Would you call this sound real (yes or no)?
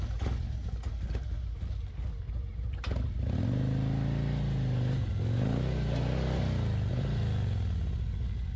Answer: yes